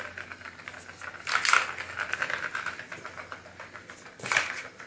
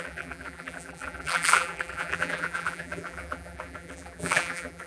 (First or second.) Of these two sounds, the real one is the first